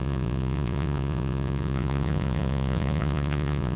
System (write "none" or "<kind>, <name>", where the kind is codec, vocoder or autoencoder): vocoder, Vocos